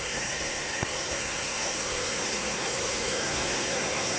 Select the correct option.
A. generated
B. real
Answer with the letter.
A